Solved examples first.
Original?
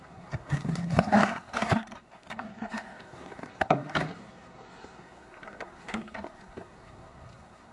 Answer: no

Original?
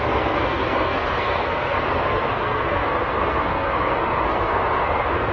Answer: no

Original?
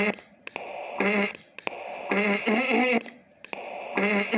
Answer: yes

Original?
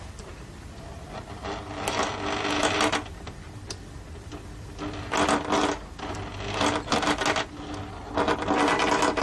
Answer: yes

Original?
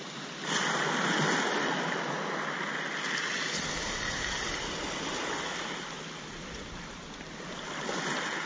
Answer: yes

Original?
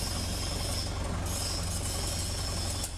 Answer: yes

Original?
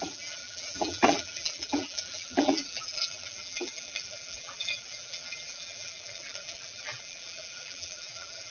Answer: no